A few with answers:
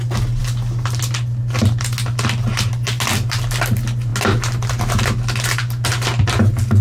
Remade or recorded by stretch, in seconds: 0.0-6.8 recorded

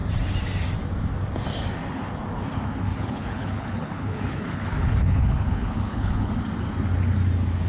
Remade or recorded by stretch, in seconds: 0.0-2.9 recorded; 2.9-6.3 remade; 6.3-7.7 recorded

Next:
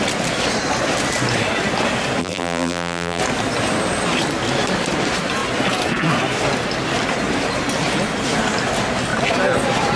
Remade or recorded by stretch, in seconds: 0.0-2.2 recorded; 2.2-3.2 remade; 3.2-10.0 recorded

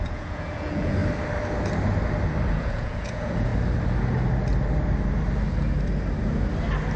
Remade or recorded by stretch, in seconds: 0.0-1.0 remade; 1.0-2.5 recorded; 2.5-3.5 remade; 3.5-7.0 recorded

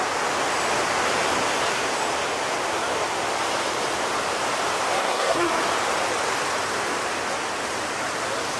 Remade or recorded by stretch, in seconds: 0.0-5.0 recorded; 5.0-5.6 remade; 5.6-8.6 recorded

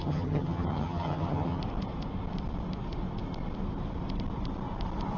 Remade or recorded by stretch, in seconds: 0.0-1.6 remade; 1.6-5.2 recorded

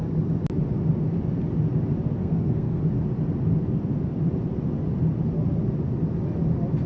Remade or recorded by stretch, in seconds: 0.0-2.2 recorded; 2.2-2.8 remade; 2.8-6.9 recorded

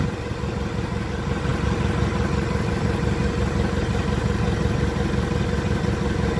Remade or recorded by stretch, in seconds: 0.0-6.4 recorded